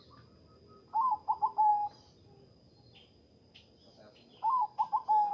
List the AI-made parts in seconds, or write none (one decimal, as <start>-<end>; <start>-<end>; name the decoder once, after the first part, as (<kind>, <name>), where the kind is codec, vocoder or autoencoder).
none